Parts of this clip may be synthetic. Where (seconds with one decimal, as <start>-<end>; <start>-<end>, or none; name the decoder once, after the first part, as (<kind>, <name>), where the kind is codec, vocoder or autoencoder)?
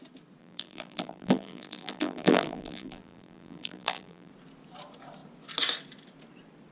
0.4-4.3 (vocoder, BigVGAN v2)